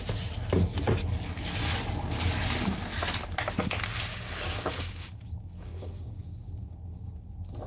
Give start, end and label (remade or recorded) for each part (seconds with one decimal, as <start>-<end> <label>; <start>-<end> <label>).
0.0-4.1 recorded; 4.1-7.3 remade; 7.3-7.7 recorded